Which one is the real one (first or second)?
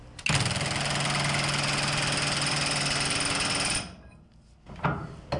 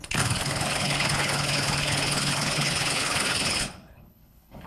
first